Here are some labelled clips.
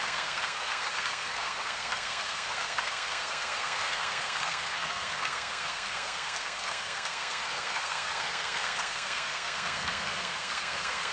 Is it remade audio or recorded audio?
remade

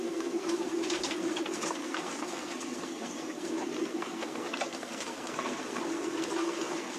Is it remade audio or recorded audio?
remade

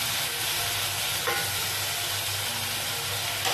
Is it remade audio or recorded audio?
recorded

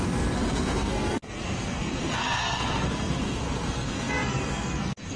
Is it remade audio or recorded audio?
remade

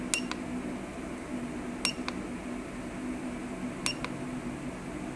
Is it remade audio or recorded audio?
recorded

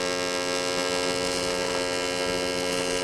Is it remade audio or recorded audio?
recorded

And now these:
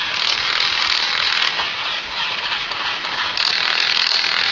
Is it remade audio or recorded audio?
recorded